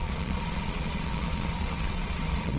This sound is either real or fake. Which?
fake